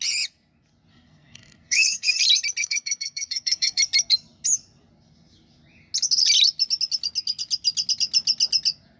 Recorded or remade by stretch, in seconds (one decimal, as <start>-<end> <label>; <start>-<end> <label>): 0.0-0.9 recorded; 0.9-2.2 remade; 2.2-2.6 recorded; 2.6-3.8 remade; 3.8-9.0 recorded